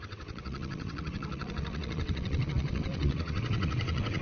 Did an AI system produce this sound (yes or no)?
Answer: yes